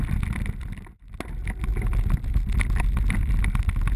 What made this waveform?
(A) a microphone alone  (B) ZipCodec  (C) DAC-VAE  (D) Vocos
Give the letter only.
A